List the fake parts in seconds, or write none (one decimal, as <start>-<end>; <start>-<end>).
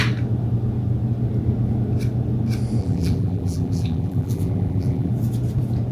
2.8-5.1